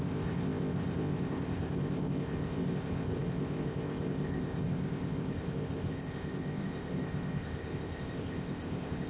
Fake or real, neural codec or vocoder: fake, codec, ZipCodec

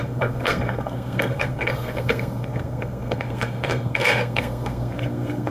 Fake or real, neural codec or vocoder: fake, codec, SNAC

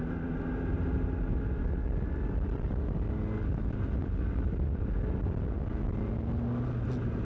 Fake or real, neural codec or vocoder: real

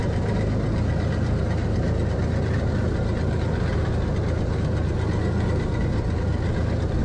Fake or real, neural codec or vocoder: real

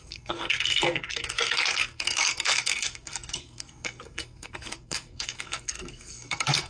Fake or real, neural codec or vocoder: fake, codec, SNAC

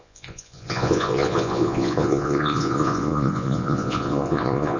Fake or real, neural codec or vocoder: fake, vocoder, Vocos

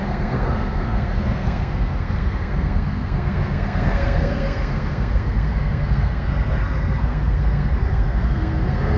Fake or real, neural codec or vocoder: fake, codec, SNAC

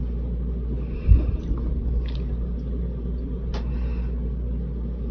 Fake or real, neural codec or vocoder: real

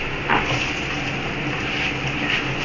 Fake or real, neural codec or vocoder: real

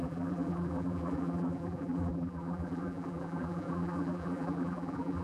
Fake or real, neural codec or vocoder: fake, vocoder, BigVGAN v2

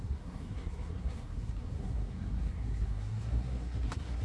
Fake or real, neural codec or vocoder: fake, codec, SNAC